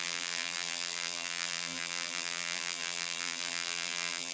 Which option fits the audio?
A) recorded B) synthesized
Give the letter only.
B